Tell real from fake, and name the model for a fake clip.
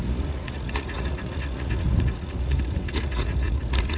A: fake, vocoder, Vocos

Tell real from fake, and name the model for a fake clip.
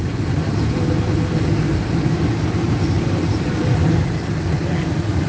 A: real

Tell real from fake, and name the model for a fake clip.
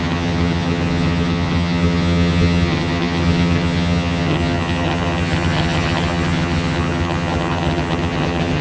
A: fake, vocoder, HiFi-GAN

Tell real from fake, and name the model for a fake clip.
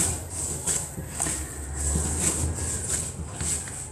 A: real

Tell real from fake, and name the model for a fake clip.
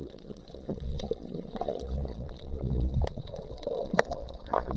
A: fake, vocoder, Vocos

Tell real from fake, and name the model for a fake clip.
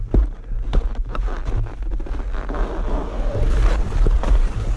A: real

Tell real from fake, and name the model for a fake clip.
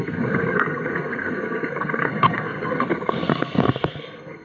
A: fake, codec, SNAC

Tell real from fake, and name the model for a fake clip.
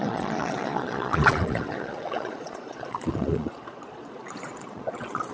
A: fake, vocoder, Vocos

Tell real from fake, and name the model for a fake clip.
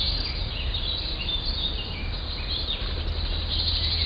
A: real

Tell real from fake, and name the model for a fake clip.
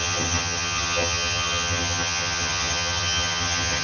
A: fake, vocoder, HiFi-GAN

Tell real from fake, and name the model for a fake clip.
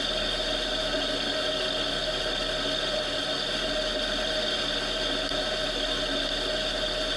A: real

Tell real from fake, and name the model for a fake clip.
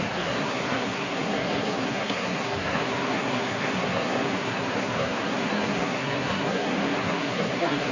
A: fake, codec, SNAC